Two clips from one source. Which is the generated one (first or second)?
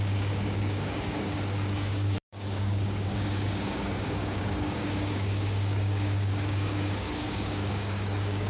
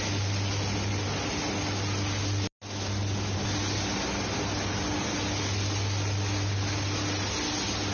first